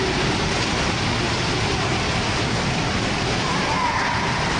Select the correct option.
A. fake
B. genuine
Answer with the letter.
B